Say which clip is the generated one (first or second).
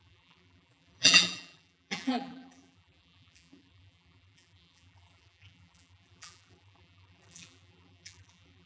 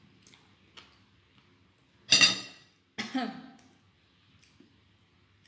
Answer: first